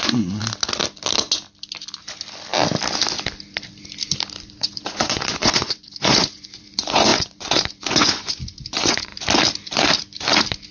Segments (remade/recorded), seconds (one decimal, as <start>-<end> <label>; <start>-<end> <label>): 0.0-0.4 remade; 0.4-4.4 recorded; 4.4-9.1 remade; 9.1-10.7 recorded